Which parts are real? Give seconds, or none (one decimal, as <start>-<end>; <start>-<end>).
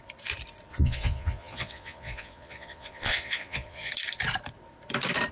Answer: 0.0-0.7; 3.9-5.3